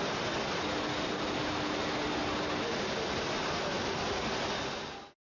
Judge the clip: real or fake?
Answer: real